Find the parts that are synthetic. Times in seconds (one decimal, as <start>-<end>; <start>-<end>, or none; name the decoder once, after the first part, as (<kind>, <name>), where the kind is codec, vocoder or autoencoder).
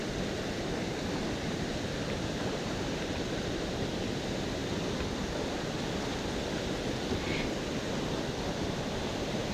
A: none